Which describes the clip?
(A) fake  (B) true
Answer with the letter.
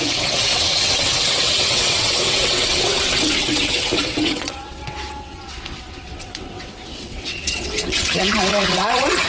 A